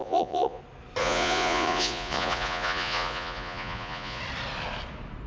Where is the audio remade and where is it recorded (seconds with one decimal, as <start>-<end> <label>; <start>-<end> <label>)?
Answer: 0.0-0.6 remade; 0.6-1.0 recorded; 1.0-4.2 remade; 4.2-5.3 recorded